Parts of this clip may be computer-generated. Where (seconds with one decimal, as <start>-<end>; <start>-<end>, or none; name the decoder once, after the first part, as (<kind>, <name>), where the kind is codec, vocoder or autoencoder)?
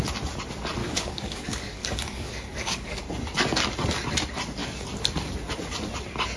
0.8-3.0 (codec, DAC)